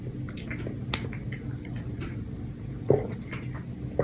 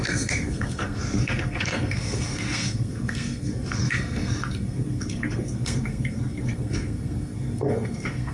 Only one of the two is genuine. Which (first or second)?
first